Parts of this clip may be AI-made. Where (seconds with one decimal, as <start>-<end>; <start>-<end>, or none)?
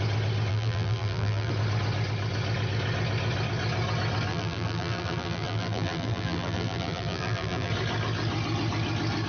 0.5-1.5; 4.3-7.7